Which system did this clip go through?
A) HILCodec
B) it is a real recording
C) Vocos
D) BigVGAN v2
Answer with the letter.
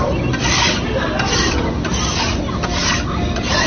B